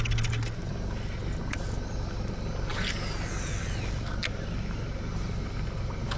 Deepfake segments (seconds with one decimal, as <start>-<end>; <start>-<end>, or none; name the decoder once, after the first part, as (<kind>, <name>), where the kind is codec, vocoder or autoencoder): none